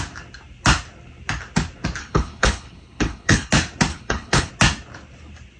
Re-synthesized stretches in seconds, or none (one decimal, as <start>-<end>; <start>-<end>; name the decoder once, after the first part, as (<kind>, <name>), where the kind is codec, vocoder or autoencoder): 2.0-3.5 (codec, HILCodec); 3.9-4.5